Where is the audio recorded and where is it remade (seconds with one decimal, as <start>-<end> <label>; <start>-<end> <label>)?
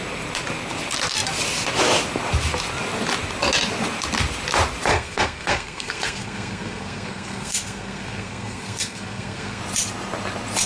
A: 0.0-4.9 recorded; 4.9-9.6 remade; 9.6-10.7 recorded